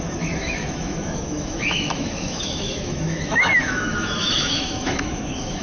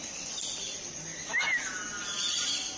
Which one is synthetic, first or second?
first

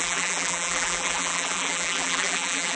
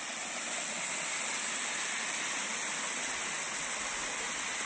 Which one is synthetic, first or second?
first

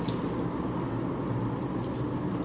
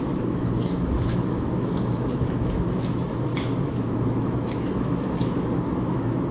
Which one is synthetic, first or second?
second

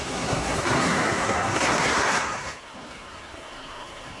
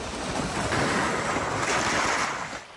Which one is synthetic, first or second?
first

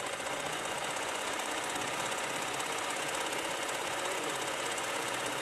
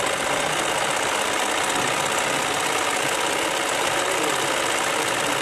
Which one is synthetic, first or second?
first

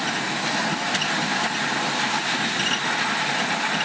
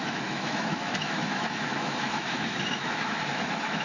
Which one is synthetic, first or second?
second